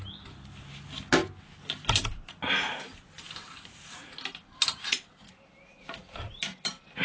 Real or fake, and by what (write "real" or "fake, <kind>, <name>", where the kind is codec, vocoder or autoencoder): real